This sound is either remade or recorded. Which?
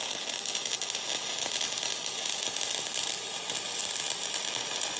recorded